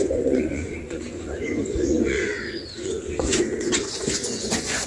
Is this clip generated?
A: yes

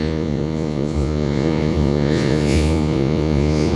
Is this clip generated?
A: yes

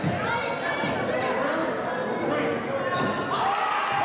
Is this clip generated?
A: no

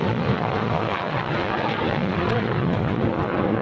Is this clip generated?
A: yes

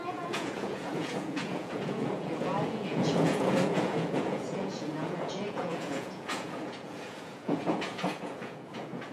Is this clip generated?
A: yes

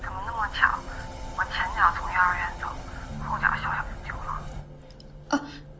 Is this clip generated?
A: no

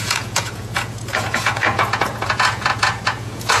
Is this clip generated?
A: yes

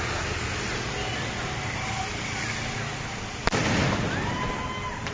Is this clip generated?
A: no